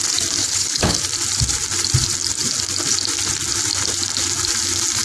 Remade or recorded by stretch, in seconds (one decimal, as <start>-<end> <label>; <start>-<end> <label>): 0.0-0.4 recorded; 0.4-1.0 remade; 1.0-5.0 recorded